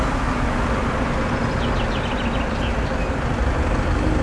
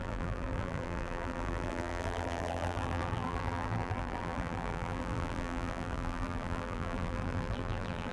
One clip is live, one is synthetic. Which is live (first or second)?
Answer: first